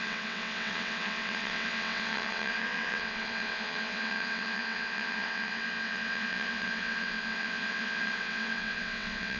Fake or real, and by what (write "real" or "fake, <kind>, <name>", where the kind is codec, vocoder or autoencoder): fake, vocoder, WaveNeXt